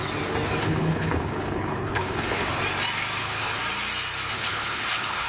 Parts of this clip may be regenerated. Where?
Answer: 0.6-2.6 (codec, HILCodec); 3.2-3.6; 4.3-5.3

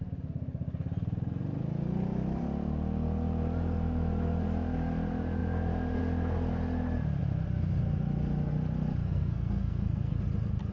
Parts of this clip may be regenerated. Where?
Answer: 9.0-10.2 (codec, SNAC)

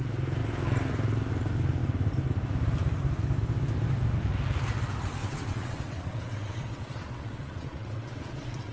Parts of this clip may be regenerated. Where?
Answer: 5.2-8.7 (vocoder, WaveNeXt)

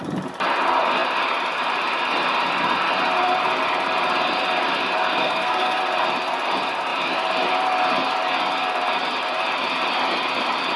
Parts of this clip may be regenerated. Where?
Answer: 5.1-5.8 (codec, SNAC)

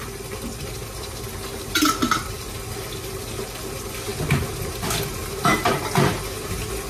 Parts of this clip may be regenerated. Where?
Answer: none